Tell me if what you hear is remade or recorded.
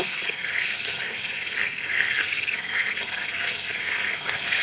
remade